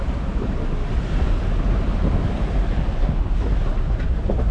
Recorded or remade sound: recorded